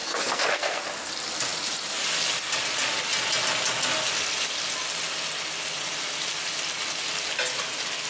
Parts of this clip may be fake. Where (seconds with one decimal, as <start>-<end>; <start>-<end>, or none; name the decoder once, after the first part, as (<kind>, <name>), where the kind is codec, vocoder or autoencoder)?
0.0-0.8 (codec, SNAC)